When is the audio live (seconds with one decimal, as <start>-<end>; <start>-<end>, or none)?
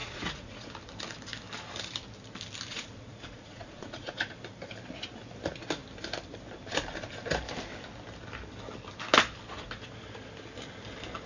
0.7-2.7; 4.3-11.3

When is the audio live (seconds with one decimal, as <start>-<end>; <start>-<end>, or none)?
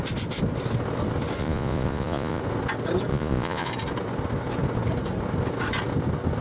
0.0-1.4; 2.4-3.1; 3.7-6.4